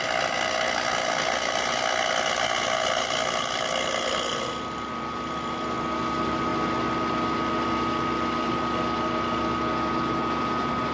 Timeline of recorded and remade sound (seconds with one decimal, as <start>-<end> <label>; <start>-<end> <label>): 0.0-10.9 recorded